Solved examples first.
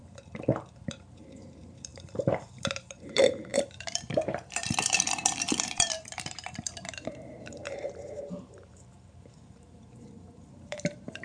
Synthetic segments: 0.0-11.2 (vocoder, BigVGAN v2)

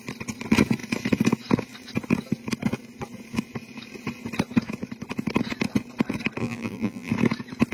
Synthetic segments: 6.4-7.1 (vocoder, BigVGAN v2)

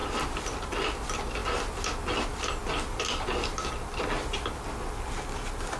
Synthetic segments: none

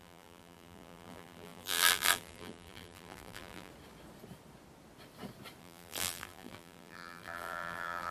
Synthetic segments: 0.0-3.7 (vocoder, BigVGAN v2); 5.6-8.1

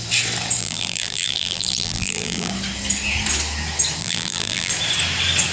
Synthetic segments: 0.6-2.5 (vocoder, BigVGAN v2); 4.0-4.7

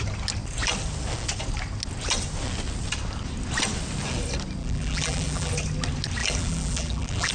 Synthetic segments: 4.6-5.5 (vocoder, BigVGAN v2); 6.2-7.3

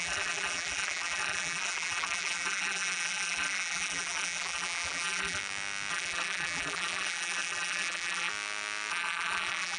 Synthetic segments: 0.0-5.4 (vocoder, BigVGAN v2); 5.9-8.3; 8.9-9.8